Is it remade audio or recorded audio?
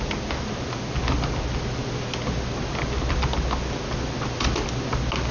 recorded